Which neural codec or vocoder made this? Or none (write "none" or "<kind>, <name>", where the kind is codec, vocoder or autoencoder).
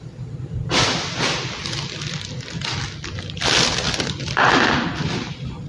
none